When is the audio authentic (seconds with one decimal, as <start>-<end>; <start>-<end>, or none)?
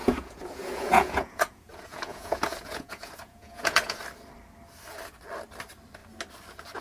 4.0-6.8